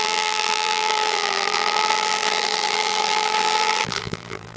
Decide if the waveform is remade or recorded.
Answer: remade